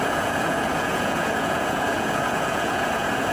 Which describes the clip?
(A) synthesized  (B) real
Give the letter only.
A